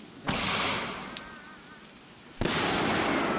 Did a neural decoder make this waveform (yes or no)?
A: no